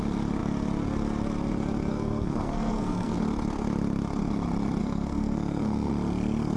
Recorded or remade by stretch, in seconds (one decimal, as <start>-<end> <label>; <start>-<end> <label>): 0.0-1.9 recorded; 1.9-3.2 remade; 3.2-4.8 recorded; 4.8-5.9 remade; 5.9-6.6 recorded